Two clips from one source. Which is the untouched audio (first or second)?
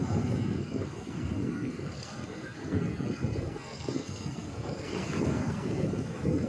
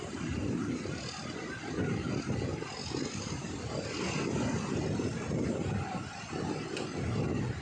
second